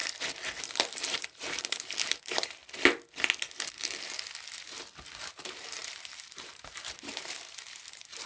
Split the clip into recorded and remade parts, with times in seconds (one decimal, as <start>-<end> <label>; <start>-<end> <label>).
0.0-0.6 recorded; 0.6-2.6 remade; 2.6-5.2 recorded; 5.2-8.3 remade